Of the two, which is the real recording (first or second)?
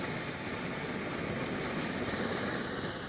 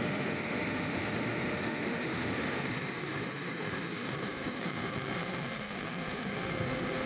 first